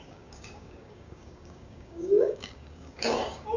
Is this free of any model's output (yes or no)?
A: no